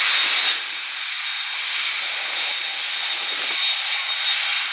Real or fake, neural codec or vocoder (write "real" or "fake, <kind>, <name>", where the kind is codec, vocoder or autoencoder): real